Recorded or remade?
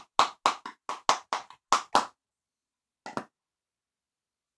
recorded